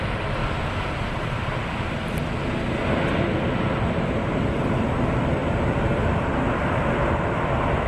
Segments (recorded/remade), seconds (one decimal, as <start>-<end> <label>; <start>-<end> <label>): 0.0-0.4 remade; 0.4-3.1 recorded; 3.1-7.9 remade